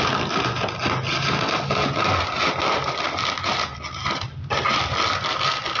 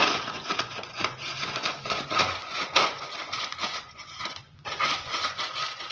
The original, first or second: first